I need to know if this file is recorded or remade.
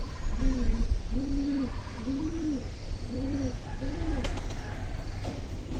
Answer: remade